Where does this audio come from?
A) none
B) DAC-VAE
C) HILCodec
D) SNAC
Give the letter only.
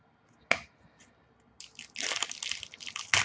A